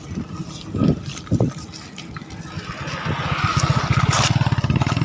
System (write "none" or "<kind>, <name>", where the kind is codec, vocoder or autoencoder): none